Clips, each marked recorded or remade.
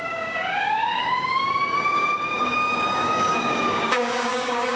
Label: remade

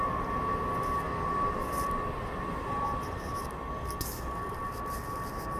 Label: recorded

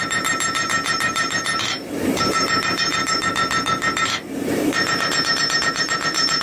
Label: remade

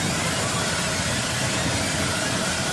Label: recorded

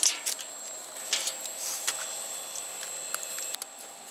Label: recorded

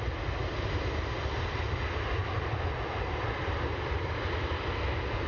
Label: recorded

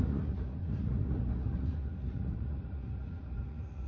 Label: remade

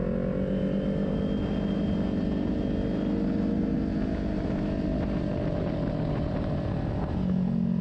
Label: recorded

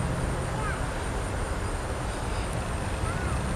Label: recorded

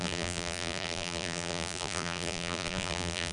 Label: remade